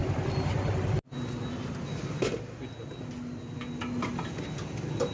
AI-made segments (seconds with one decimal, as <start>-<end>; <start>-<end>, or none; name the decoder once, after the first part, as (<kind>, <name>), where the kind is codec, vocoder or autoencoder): none